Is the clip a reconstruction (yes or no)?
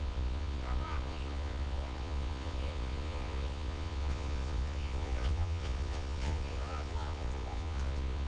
yes